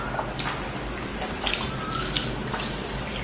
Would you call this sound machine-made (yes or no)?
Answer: no